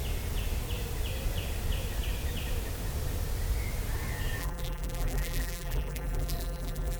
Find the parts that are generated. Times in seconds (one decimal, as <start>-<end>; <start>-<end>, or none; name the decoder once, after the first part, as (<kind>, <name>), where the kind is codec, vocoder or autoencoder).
4.4-7.0 (vocoder, BigVGAN v2)